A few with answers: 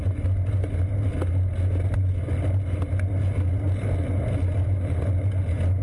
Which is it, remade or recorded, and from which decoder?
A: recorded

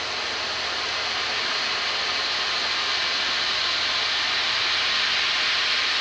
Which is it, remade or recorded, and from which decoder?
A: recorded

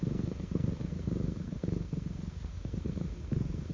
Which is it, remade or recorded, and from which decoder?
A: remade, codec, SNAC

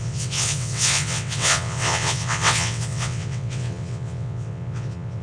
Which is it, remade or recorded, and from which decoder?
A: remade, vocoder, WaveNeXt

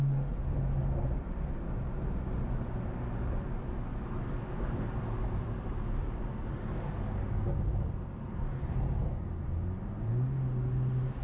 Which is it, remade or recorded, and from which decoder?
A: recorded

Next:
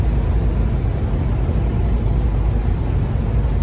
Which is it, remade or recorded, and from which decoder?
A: recorded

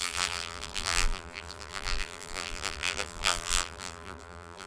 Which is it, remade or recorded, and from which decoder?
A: remade, vocoder, BigVGAN v2